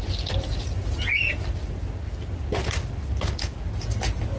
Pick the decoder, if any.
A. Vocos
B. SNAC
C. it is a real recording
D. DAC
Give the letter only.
C